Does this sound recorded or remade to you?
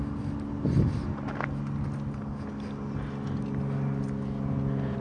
recorded